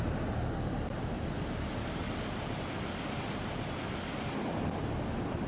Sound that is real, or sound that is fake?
real